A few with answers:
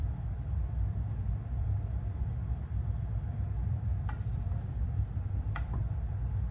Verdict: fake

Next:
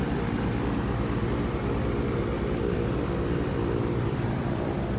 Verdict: fake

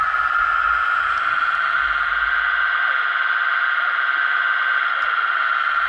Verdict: real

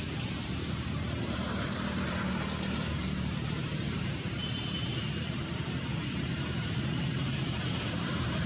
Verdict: fake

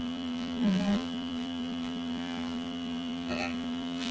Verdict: fake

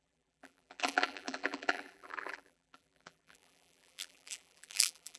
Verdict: fake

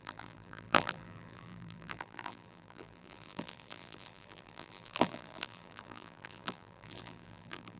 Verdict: fake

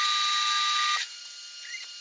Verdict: real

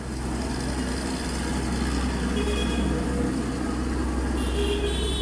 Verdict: real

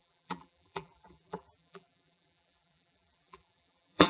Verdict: fake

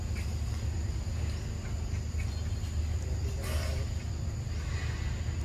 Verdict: real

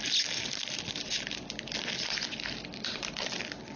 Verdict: real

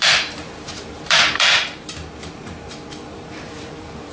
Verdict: fake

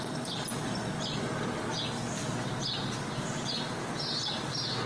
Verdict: fake